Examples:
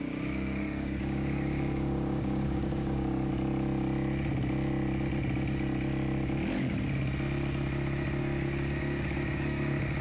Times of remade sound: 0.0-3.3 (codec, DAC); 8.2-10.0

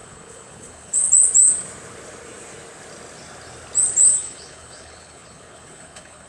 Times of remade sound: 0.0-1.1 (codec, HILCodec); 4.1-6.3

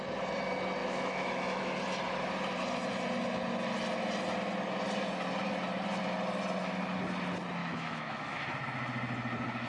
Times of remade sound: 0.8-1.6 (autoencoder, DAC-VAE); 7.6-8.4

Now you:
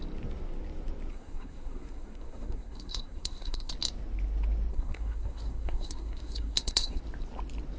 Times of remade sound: 1.1-3.7 (codec, SNAC); 4.7-7.0

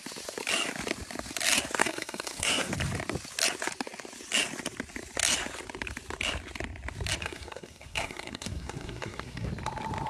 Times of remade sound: 1.8-2.7 (codec, SNAC); 7.2-9.5